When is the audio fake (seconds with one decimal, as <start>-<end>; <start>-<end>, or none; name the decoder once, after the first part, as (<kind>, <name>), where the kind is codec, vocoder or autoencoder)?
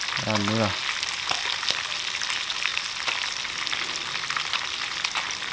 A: none